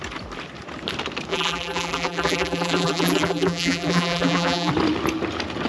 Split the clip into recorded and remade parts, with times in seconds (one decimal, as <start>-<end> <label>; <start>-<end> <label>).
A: 0.0-1.3 recorded; 1.3-4.7 remade; 4.7-5.7 recorded